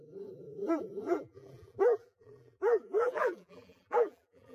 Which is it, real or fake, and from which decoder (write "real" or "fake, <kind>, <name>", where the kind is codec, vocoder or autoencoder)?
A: fake, vocoder, BigVGAN v2